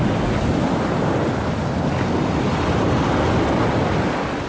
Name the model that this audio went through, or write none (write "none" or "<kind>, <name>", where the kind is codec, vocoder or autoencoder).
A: none